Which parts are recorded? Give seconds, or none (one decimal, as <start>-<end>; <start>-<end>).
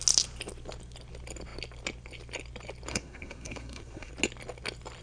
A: 0.0-2.9; 4.1-5.0